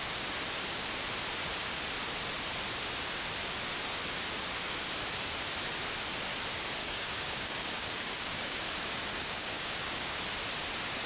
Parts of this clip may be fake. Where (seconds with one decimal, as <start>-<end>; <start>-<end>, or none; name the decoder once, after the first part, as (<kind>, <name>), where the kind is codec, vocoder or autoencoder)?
6.8-8.6 (codec, DAC); 9.1-10.2